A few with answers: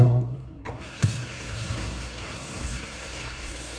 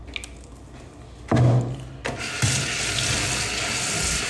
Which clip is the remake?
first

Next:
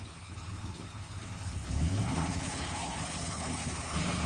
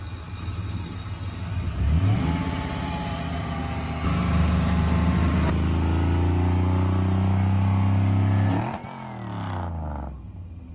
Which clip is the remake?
first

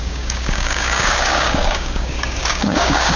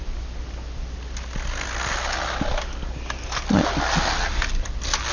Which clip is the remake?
first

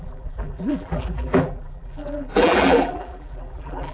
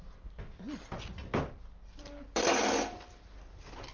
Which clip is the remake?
first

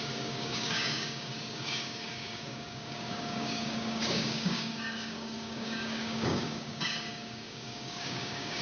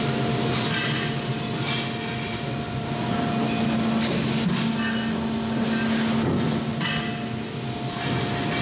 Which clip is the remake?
first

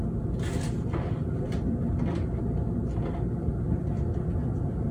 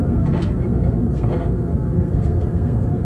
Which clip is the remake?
second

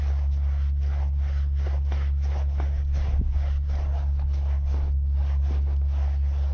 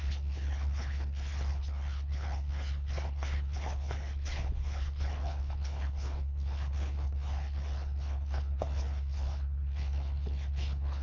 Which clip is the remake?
second